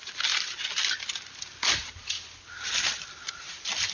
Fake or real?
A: real